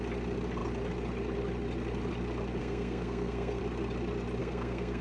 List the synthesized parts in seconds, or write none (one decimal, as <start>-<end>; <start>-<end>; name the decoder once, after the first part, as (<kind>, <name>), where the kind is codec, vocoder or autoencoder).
2.6-3.6 (codec, SNAC); 4.4-5.0